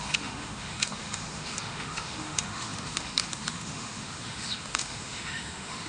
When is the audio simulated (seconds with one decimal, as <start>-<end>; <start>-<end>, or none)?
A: 0.0-5.9

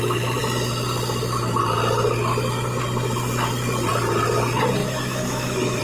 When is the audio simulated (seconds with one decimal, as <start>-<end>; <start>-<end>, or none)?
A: 4.8-5.8

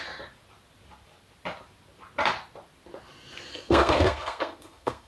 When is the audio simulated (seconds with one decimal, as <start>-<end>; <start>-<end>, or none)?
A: 3.5-5.1

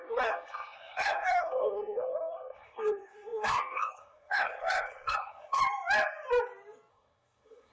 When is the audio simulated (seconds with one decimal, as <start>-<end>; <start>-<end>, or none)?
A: 0.0-5.6; 6.9-7.7

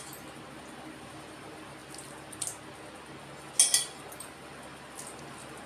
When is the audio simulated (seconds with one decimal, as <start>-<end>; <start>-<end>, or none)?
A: none

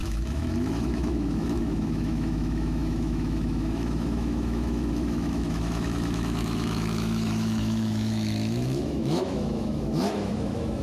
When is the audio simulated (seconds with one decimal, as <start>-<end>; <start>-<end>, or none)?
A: 0.0-10.8

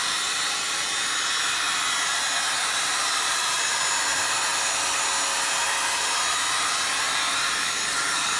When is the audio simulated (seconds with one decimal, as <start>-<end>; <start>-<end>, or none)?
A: none